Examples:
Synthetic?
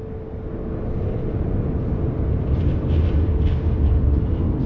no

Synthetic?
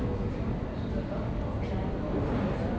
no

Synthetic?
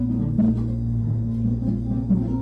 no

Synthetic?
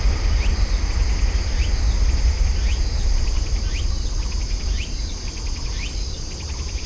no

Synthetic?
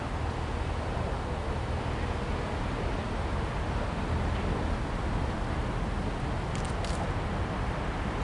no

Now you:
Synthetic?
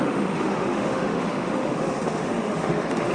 yes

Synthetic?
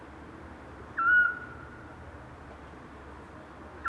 no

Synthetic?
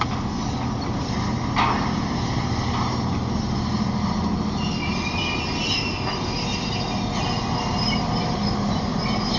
no